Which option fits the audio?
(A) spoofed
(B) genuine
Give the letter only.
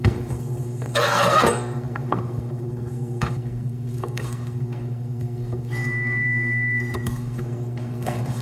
A